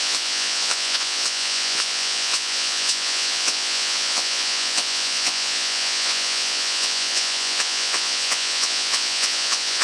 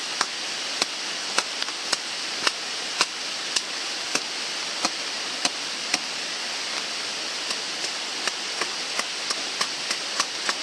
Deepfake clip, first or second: first